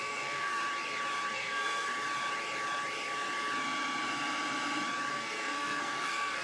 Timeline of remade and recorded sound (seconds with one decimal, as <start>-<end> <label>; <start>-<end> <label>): 0.0-0.6 remade; 0.6-1.3 recorded; 1.3-1.9 remade; 1.9-5.1 recorded; 5.1-6.4 remade